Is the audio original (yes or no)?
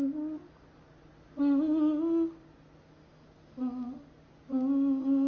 yes